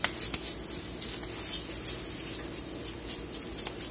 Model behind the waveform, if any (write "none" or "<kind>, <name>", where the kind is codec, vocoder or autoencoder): none